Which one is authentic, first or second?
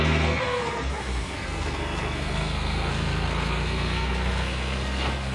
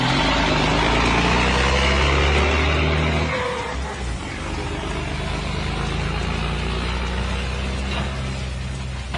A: second